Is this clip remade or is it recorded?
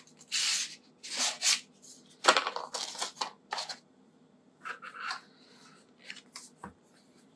recorded